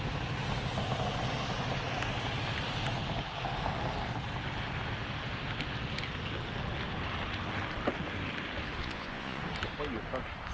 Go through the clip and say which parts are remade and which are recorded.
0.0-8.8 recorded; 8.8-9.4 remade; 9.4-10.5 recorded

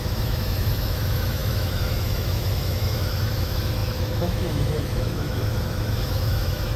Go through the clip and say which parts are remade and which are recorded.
0.0-6.8 remade

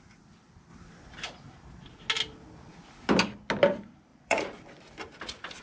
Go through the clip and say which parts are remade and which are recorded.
0.0-4.1 recorded; 4.1-4.8 remade; 4.8-5.6 recorded

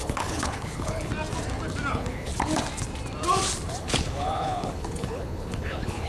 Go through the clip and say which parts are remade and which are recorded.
0.0-1.1 remade; 1.1-1.9 recorded; 1.9-2.3 remade; 2.3-3.8 recorded; 3.8-6.1 remade

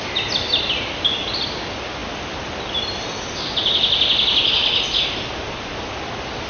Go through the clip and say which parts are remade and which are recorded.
0.0-6.5 recorded

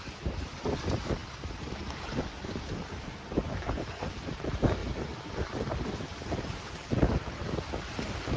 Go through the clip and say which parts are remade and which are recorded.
0.0-4.8 remade; 4.8-6.3 recorded; 6.3-8.4 remade

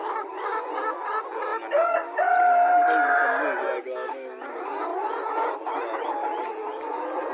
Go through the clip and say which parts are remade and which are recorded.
0.0-7.3 recorded